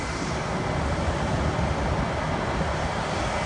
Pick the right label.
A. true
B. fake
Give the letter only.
A